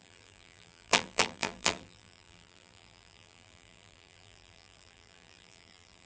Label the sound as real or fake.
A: fake